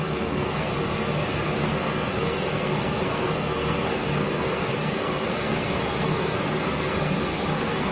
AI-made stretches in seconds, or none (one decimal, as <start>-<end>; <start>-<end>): 0.0-0.7; 1.3-7.9